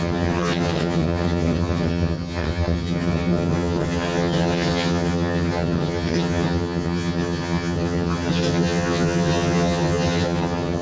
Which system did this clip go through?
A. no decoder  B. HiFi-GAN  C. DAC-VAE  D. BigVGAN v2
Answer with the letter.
B